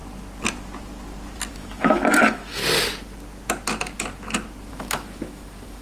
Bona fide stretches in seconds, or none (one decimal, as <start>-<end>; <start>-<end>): 0.0-1.5; 2.6-4.7